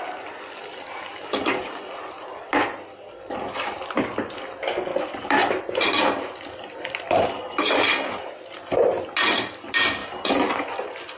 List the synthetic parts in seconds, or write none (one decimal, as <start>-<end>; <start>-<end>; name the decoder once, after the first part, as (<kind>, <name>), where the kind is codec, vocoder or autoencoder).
0.6-1.8 (vocoder, BigVGAN v2); 4.9-7.7; 10.0-11.2